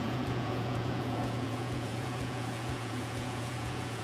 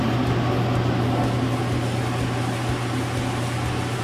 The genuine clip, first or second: second